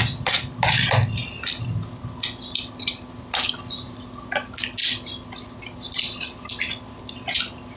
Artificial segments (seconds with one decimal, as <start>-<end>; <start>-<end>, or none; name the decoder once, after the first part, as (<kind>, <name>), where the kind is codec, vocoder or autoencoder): none